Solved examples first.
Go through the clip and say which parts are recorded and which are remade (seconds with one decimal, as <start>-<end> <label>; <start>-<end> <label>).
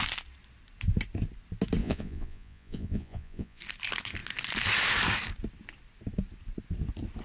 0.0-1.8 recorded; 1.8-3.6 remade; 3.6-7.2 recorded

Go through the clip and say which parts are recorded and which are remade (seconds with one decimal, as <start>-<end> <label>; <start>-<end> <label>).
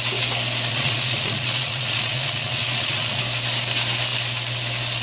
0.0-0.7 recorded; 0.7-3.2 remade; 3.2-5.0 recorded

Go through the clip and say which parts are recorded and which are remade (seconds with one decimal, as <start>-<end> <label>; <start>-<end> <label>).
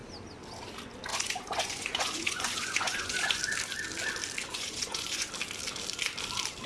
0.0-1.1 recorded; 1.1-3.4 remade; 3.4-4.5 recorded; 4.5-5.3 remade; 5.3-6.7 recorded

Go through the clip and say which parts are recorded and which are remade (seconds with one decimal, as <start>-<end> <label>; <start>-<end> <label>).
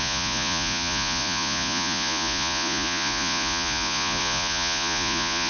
0.0-5.5 remade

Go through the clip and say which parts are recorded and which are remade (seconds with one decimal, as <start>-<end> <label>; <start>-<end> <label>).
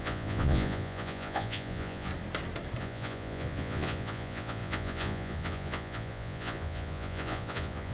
0.0-2.1 remade; 2.1-2.8 recorded; 2.8-7.9 remade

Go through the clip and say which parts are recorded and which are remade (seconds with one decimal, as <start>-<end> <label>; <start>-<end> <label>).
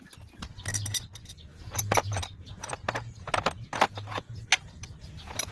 0.0-1.5 recorded; 1.5-2.7 remade; 2.7-4.1 recorded; 4.1-4.8 remade; 4.8-5.5 recorded